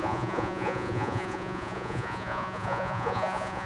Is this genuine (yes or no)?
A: no